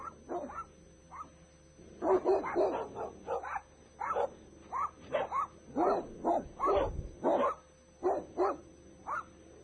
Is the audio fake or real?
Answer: real